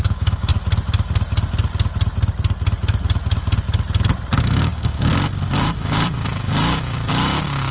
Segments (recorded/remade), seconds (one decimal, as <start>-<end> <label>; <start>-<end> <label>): 0.0-0.5 remade; 0.5-4.4 recorded; 4.4-5.1 remade; 5.1-5.6 recorded; 5.6-7.7 remade